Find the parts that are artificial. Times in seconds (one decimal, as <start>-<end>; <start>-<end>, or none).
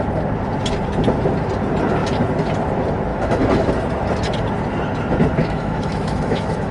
3.1-3.7; 5.4-6.7